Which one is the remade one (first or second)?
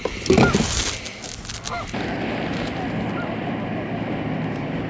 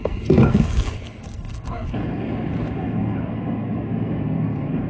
second